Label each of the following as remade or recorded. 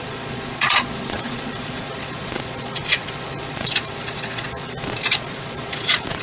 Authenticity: remade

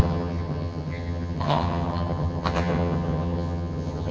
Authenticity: remade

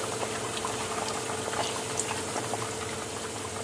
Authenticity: recorded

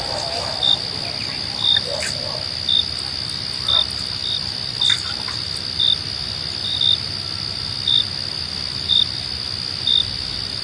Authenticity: recorded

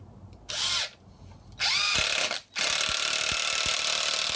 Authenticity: recorded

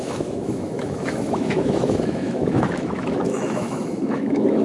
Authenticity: remade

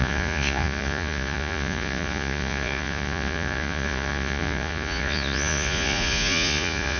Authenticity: remade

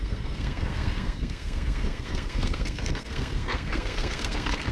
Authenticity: remade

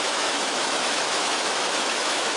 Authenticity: remade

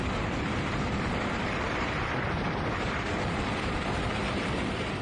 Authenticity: remade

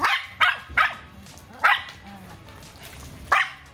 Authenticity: recorded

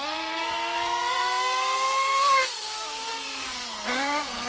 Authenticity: remade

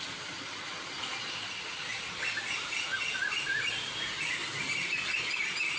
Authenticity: recorded